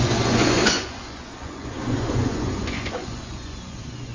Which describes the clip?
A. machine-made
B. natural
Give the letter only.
A